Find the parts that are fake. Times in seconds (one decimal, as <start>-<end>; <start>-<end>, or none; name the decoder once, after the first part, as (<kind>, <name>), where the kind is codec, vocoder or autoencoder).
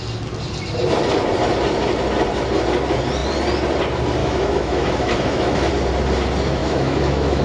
4.2-5.7 (autoencoder, DAC-VAE); 6.6-7.4